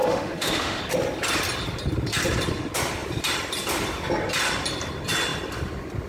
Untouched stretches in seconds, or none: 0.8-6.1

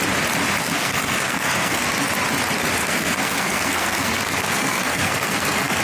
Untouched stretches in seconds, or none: 0.0-0.6; 1.9-2.8

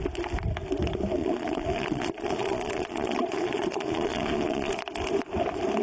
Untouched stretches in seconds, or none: 0.0-1.2; 4.7-5.8

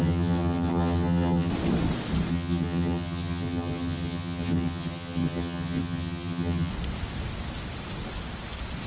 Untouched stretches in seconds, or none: 1.5-2.3; 6.7-8.9

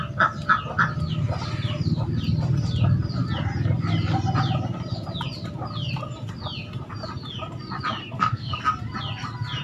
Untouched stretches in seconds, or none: 0.0-8.0; 8.6-9.6

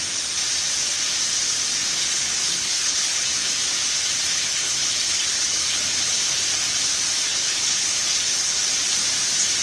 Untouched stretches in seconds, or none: 0.0-2.0; 3.6-4.3; 6.1-7.3; 8.6-9.6